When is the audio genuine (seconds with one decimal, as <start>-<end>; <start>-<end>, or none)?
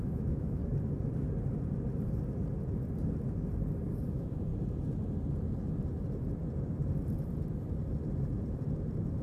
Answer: 0.6-4.1; 4.5-9.2